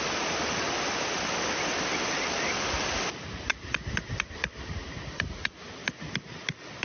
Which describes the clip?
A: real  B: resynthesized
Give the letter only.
A